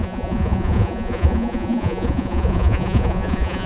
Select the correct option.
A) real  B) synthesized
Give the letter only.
B